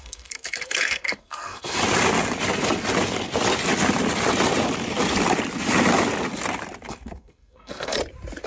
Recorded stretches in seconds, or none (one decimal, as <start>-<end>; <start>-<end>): 1.8-6.9; 8.0-8.5